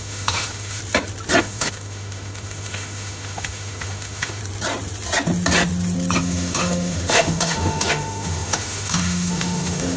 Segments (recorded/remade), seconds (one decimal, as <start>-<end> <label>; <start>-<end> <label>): 0.0-0.8 remade; 0.8-1.4 recorded; 1.4-4.4 remade; 4.4-6.2 recorded; 6.2-10.0 remade